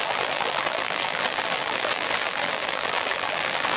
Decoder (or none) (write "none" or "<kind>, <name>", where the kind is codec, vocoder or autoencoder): vocoder, BigVGAN v2